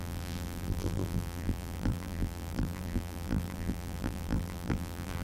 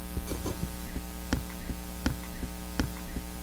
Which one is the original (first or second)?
second